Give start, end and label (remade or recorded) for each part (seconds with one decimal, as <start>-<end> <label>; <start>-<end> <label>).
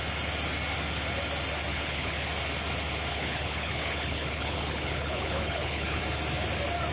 0.0-1.7 recorded; 1.7-2.3 remade; 2.3-3.1 recorded; 3.1-6.0 remade; 6.0-6.9 recorded